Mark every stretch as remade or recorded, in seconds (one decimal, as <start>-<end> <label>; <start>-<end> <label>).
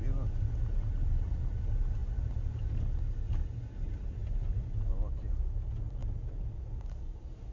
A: 0.0-7.5 recorded